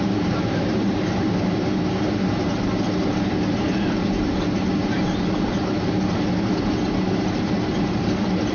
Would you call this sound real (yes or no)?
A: no